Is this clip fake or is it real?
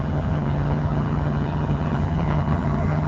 fake